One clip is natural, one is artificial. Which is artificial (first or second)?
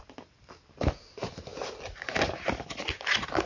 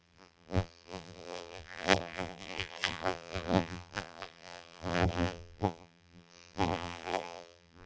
second